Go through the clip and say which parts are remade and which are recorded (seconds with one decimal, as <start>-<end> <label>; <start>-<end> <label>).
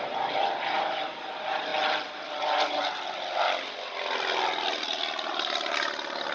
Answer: 0.0-1.7 remade; 1.7-2.2 recorded; 2.2-2.8 remade; 2.8-5.3 recorded; 5.3-6.3 remade